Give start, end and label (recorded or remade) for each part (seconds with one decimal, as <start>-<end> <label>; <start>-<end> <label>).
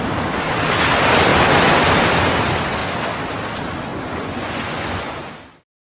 0.0-3.9 recorded; 3.9-5.3 remade; 5.3-6.0 recorded